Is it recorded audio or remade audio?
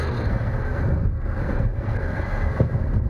remade